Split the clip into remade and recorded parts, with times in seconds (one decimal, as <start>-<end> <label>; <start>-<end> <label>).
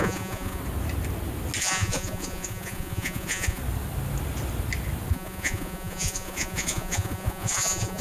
0.0-0.6 remade; 0.6-1.6 recorded; 1.6-3.6 remade; 3.6-5.1 recorded; 5.1-8.0 remade